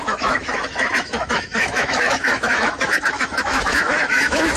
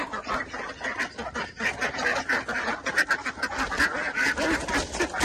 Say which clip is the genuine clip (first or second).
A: second